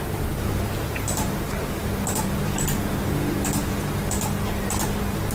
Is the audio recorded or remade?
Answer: recorded